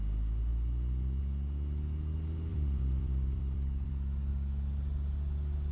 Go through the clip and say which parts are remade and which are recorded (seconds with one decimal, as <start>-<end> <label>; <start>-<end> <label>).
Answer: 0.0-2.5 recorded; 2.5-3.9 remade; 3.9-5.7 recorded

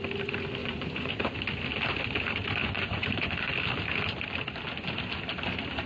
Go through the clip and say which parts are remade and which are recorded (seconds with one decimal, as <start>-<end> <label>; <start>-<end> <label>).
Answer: 0.0-0.6 recorded; 0.6-1.1 remade; 1.1-2.6 recorded; 2.6-3.4 remade; 3.4-5.9 recorded

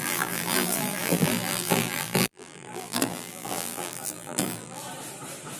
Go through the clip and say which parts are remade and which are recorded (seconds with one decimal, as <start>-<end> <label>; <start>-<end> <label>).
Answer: 0.0-4.8 remade; 4.8-5.6 recorded

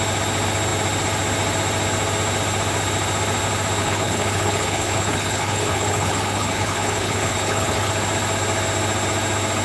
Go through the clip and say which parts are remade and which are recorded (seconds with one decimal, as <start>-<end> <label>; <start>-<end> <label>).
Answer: 0.0-3.8 recorded; 3.8-7.9 remade; 7.9-9.6 recorded